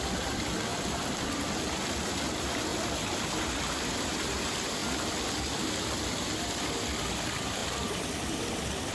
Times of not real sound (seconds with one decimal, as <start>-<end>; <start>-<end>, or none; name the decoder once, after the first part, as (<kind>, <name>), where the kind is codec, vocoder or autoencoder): 0.0-0.7 (vocoder, BigVGAN v2); 1.3-2.7; 3.4-4.8; 6.0-8.9

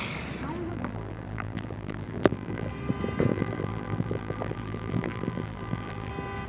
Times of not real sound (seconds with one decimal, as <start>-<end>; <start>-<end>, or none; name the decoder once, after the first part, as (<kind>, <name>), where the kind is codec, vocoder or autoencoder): 0.7-2.7 (vocoder, BigVGAN v2); 3.3-6.1

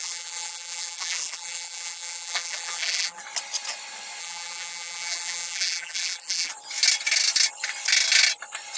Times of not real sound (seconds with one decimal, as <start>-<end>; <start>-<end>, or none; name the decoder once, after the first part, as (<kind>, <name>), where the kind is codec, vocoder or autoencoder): 0.0-3.2 (vocoder, BigVGAN v2); 4.2-6.5